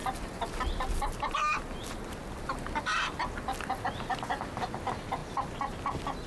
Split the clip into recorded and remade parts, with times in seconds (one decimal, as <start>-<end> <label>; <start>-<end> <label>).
0.0-6.3 recorded